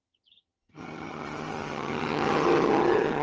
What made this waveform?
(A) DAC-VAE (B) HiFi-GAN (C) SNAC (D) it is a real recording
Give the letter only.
B